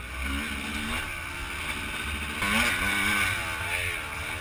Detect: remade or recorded recorded